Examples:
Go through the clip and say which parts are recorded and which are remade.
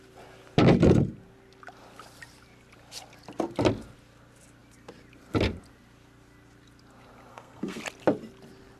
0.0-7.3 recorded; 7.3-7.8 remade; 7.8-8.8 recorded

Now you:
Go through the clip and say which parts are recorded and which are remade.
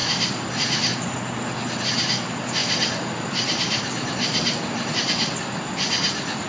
0.0-1.0 remade; 1.0-2.6 recorded; 2.6-4.9 remade; 4.9-6.5 recorded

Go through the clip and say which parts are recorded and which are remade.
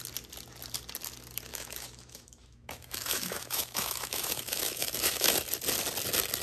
0.0-1.5 recorded; 1.5-5.3 remade; 5.3-6.4 recorded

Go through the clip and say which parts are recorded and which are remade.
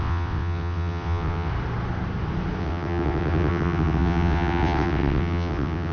0.0-1.5 remade; 1.5-2.6 recorded; 2.6-5.9 remade